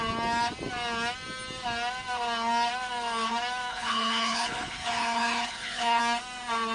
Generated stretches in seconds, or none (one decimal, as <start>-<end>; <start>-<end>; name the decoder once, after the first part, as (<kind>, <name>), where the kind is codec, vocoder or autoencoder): 3.7-6.0 (codec, HILCodec)